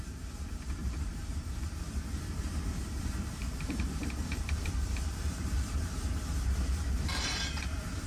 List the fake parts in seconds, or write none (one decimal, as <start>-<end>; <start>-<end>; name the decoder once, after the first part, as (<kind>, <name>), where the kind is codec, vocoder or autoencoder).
0.0-8.1 (vocoder, BigVGAN v2)